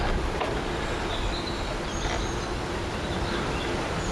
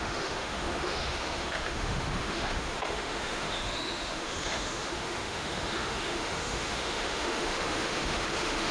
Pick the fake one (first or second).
second